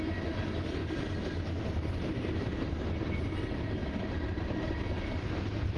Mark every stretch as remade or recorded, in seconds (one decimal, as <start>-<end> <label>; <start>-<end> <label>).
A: 0.0-5.8 recorded

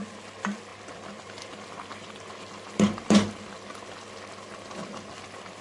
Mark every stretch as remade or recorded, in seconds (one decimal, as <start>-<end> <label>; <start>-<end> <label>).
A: 0.0-5.6 recorded

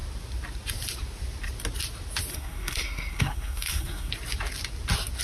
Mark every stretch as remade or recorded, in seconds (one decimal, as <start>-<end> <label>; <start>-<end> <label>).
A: 0.0-2.3 recorded; 2.3-4.1 remade; 4.1-5.2 recorded

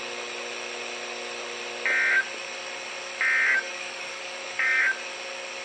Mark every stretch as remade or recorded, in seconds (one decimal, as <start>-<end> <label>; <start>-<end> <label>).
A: 0.0-3.5 recorded; 3.5-4.8 remade; 4.8-5.6 recorded

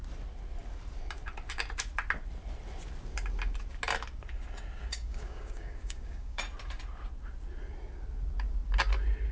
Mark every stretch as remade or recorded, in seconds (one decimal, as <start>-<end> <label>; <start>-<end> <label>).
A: 0.0-4.8 recorded; 4.8-6.4 remade; 6.4-9.3 recorded

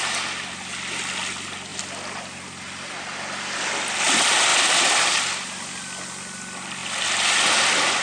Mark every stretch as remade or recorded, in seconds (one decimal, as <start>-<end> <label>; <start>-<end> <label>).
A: 0.0-4.5 recorded; 4.5-5.1 remade; 5.1-6.8 recorded; 6.8-8.0 remade

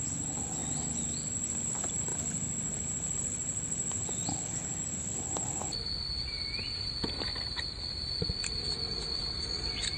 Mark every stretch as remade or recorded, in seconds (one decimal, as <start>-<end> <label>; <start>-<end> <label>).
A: 0.0-10.0 recorded

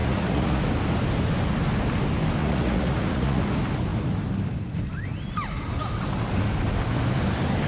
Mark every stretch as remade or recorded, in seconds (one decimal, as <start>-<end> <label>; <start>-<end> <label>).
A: 0.0-0.6 remade; 0.6-2.4 recorded; 2.4-3.4 remade; 3.4-7.7 recorded